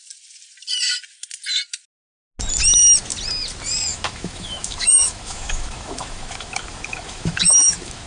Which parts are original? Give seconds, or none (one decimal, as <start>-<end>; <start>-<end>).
0.0-3.9